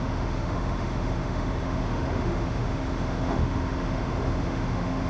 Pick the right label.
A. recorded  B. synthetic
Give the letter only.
B